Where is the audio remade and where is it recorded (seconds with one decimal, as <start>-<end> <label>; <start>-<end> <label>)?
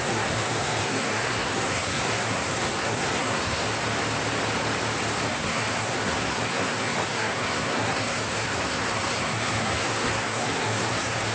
0.0-3.6 remade; 3.6-5.3 recorded; 5.3-11.3 remade